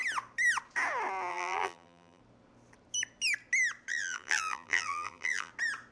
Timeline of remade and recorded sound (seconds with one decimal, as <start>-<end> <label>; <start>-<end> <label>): 0.0-1.3 recorded; 1.3-2.2 remade; 2.2-3.9 recorded; 3.9-5.5 remade; 5.5-5.9 recorded